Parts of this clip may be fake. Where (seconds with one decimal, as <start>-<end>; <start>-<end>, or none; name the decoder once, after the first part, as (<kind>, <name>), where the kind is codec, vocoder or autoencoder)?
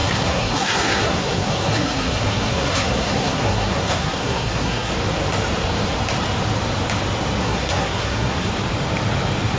0.0-4.9 (codec, SNAC); 7.4-8.5